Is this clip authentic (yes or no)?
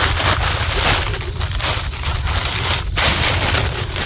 yes